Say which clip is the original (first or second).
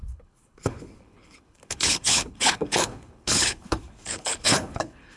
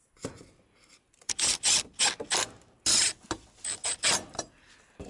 second